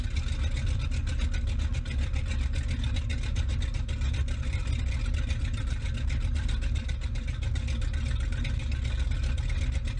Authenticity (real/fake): real